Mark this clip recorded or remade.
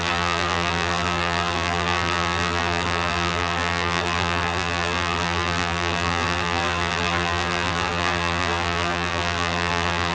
remade